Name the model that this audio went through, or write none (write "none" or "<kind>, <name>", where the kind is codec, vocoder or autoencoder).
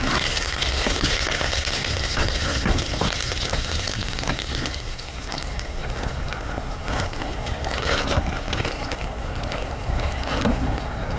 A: codec, SNAC